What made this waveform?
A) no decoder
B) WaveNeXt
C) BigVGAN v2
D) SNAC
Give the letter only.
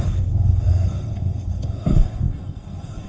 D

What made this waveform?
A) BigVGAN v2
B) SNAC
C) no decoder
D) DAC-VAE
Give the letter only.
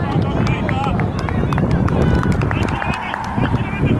C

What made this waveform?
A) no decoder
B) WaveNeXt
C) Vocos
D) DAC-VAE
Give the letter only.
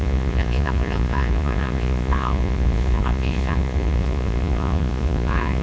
C